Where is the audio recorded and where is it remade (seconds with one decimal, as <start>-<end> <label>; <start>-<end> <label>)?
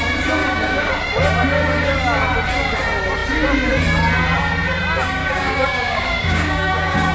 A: 0.0-0.4 recorded; 0.4-0.9 remade; 0.9-5.2 recorded; 5.2-7.1 remade